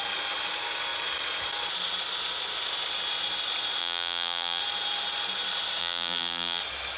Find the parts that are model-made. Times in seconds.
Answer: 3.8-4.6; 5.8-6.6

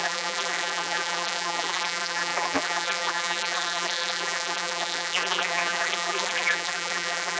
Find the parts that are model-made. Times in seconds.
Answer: 0.0-7.4

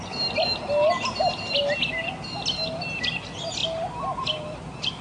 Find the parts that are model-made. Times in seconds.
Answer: none